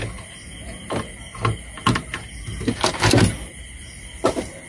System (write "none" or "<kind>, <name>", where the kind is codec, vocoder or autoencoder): none